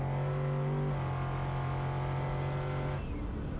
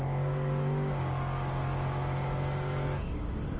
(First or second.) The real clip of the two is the first